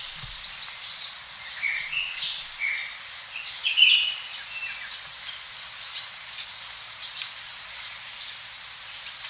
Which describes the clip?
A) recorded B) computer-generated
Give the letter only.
A